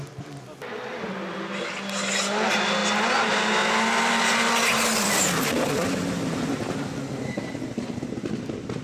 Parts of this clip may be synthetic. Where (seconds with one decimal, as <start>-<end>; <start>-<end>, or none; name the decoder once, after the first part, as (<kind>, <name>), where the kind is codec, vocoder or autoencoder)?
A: none